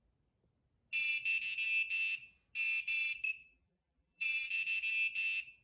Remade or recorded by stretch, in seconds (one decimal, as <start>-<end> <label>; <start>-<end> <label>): 0.0-3.4 recorded; 3.4-4.5 remade; 4.5-5.6 recorded